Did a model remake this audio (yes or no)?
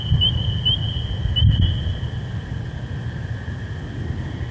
no